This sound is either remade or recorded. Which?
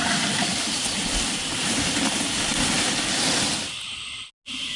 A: recorded